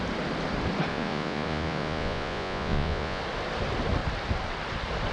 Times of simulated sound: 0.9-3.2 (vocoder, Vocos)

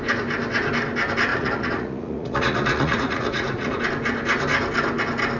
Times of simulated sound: 1.3-3.8 (vocoder, Vocos)

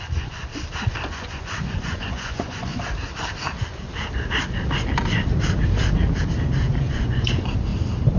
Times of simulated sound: 0.0-0.5 (vocoder, Vocos); 1.1-2.7; 6.8-7.7

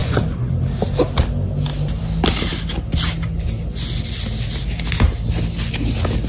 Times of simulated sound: 0.0-0.5 (vocoder, Vocos)

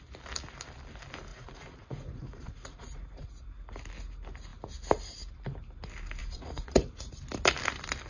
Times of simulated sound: 1.3-3.3 (vocoder, Vocos); 6.2-7.1

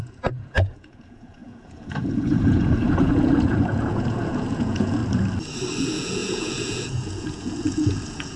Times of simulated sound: 0.0-5.0 (vocoder, Vocos); 5.8-8.4

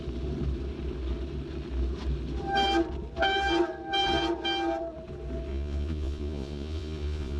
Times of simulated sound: 5.5-7.4 (vocoder, Vocos)

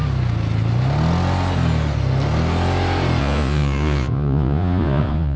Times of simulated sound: 3.2-5.4 (vocoder, Vocos)